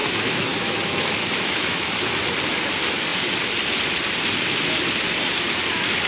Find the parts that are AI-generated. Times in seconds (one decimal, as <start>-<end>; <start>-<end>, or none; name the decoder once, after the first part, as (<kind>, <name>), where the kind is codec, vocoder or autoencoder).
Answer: 0.0-2.0 (autoencoder, DAC-VAE)